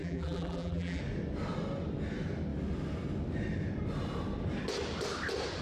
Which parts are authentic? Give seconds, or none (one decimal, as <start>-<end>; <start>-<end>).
1.0-5.6